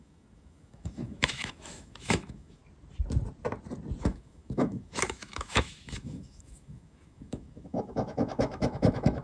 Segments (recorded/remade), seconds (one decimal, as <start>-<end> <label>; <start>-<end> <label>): 0.0-2.6 remade; 2.6-4.0 recorded; 4.0-9.2 remade